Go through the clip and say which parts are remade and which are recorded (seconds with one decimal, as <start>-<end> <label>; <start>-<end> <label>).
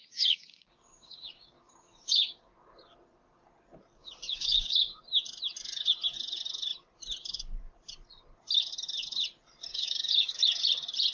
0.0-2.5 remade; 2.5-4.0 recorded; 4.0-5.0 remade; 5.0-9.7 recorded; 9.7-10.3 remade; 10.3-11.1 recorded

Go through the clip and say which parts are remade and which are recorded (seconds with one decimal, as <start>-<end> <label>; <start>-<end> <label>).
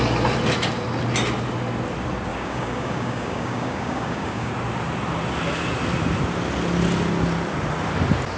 0.0-2.3 recorded; 2.3-4.5 remade; 4.5-8.4 recorded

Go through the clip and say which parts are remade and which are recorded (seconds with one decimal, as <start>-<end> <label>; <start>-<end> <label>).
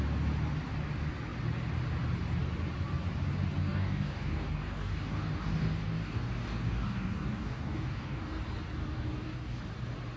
0.0-3.6 recorded; 3.6-8.4 remade; 8.4-8.8 recorded; 8.8-9.6 remade; 9.6-10.2 recorded